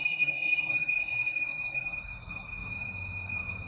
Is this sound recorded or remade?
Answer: remade